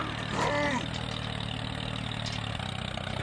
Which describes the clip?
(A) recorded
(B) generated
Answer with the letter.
A